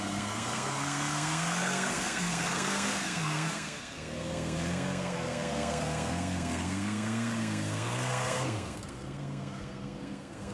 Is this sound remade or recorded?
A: remade